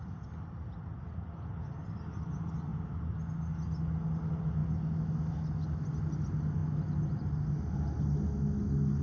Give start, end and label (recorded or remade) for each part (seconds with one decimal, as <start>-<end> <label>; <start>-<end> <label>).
0.0-9.0 recorded